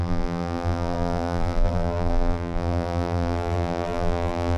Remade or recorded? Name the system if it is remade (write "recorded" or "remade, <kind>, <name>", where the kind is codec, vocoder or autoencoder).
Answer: remade, vocoder, BigVGAN v2